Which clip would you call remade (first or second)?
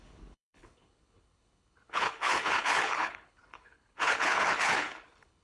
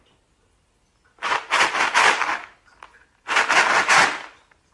first